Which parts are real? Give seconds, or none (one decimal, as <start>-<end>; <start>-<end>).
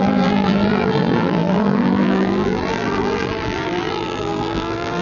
none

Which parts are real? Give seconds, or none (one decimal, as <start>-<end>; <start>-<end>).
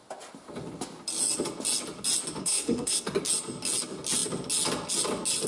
0.0-2.4; 3.2-5.5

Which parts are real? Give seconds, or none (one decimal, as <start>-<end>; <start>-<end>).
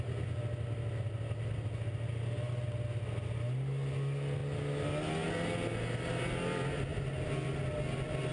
0.0-8.3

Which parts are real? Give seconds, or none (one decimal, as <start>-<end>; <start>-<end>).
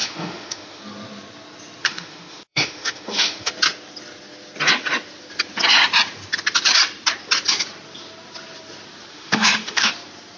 0.8-1.8; 3.5-9.1; 9.9-10.4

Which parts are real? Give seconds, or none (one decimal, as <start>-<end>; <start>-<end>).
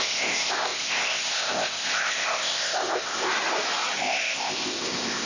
3.3-4.0